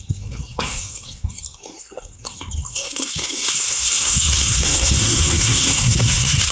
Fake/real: fake